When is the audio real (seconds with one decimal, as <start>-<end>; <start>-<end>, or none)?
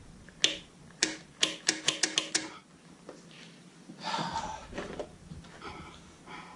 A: 0.0-4.6; 5.4-6.6